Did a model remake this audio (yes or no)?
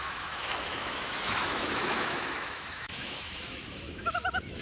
yes